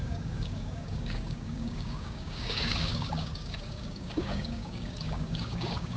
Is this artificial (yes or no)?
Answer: yes